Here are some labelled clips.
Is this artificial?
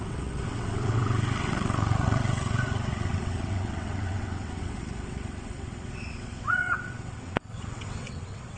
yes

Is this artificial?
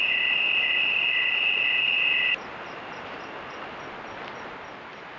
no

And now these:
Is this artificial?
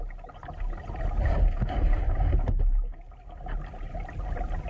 no